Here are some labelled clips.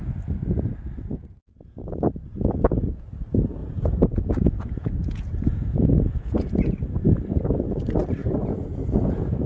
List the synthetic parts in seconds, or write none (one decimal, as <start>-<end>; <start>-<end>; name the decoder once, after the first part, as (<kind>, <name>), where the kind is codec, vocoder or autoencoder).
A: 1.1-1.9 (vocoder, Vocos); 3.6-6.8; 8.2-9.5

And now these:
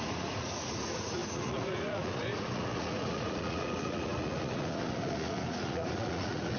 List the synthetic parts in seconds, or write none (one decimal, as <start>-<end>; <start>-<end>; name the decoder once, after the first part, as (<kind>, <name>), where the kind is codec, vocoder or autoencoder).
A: 0.0-6.6 (vocoder, Vocos)

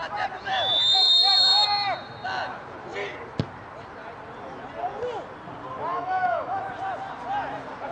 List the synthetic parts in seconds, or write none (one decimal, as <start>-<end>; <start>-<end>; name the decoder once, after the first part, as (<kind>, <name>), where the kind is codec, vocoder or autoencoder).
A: 0.5-1.3 (autoencoder, DAC-VAE); 5.9-6.6

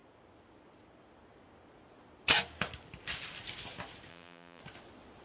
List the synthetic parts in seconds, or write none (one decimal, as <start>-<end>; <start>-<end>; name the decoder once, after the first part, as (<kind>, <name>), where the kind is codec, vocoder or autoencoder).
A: 4.1-4.6 (vocoder, BigVGAN v2)

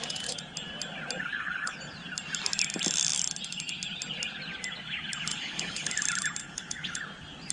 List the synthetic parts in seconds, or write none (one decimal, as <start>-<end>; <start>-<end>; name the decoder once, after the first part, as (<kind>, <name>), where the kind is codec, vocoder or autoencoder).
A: 1.2-1.8 (codec, HILCodec); 5.3-5.9; 6.4-7.0

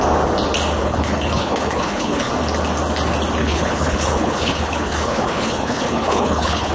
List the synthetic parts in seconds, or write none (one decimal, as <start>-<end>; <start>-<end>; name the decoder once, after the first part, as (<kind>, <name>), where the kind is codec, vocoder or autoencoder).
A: 0.8-2.3 (codec, HILCodec); 3.4-6.7